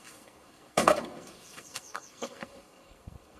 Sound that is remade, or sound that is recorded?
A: remade